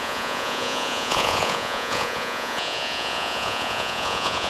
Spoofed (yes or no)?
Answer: yes